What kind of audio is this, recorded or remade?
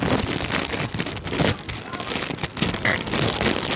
recorded